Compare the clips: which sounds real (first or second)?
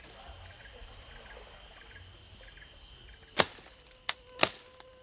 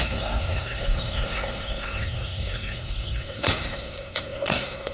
first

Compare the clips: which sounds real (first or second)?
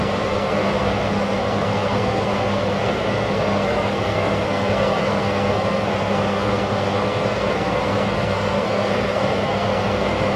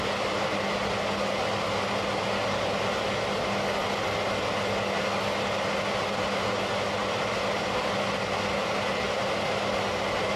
second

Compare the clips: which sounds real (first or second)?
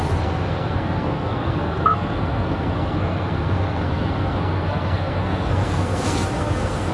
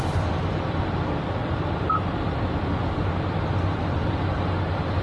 second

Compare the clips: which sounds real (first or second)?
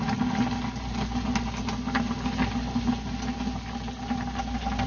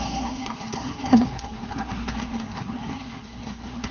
first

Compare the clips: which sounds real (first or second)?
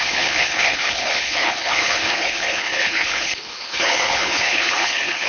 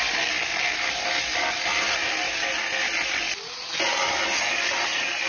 second